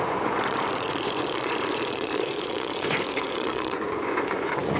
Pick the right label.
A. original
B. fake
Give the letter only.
B